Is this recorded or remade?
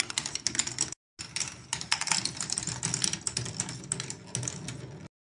recorded